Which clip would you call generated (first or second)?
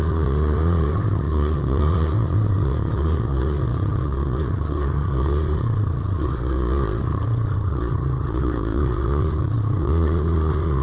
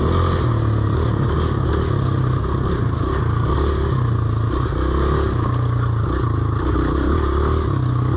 first